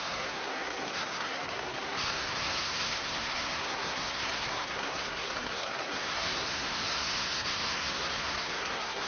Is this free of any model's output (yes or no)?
no